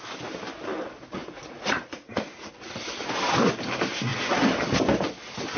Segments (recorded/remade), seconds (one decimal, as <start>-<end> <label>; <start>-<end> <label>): 0.0-1.2 recorded; 1.2-2.5 remade; 2.5-5.6 recorded